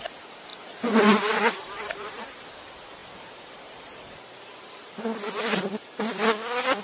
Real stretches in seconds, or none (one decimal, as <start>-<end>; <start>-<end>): 0.0-0.5; 2.2-3.0; 5.7-6.8